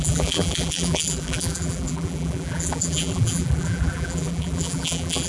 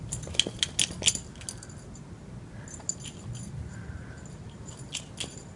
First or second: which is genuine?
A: second